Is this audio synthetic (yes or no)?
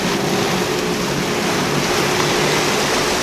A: no